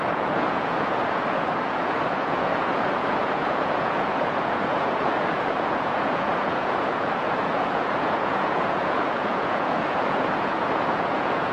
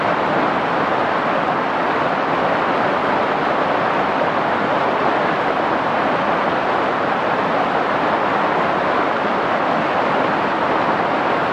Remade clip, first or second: first